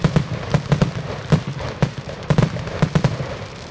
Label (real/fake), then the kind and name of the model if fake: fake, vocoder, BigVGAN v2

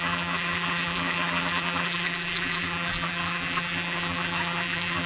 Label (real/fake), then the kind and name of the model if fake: fake, vocoder, BigVGAN v2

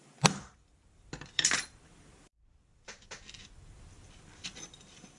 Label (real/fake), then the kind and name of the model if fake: fake, vocoder, BigVGAN v2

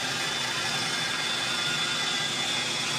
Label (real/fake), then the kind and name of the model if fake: real